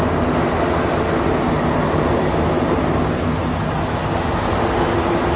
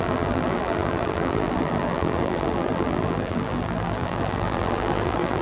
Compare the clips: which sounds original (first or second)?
first